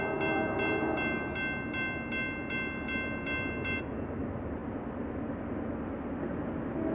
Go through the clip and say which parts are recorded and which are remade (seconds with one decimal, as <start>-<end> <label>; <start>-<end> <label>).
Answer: 0.0-6.9 recorded